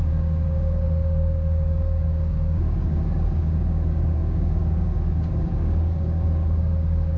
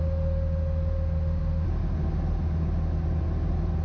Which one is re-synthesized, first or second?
first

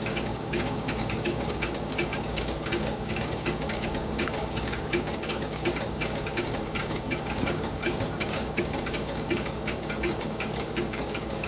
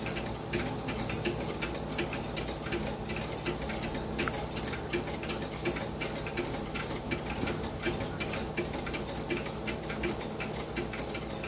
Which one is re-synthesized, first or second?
first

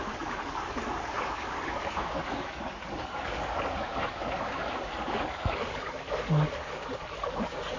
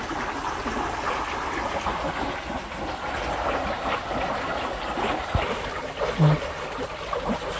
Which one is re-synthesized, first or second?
first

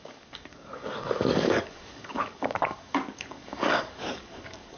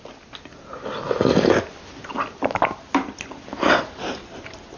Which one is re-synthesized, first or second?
first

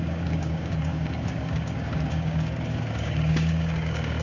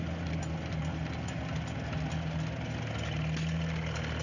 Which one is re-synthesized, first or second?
first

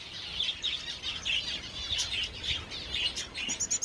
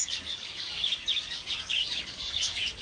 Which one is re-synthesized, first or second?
second